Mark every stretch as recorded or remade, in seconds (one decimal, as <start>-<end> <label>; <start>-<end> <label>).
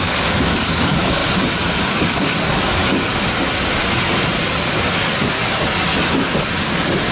0.0-1.2 remade; 1.2-1.8 recorded; 1.8-2.8 remade; 2.8-6.6 recorded; 6.6-7.1 remade